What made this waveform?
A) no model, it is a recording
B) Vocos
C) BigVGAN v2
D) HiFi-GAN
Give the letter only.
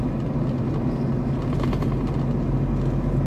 A